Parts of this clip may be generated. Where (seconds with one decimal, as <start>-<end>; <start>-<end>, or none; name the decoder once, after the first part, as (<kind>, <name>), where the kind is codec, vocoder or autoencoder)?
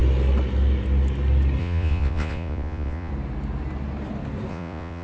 1.6-3.1 (vocoder, Vocos); 4.5-5.0